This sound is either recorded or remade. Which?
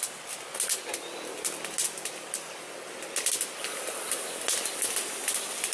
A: recorded